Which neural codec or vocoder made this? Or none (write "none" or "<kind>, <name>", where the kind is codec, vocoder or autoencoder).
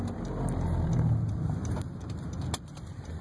none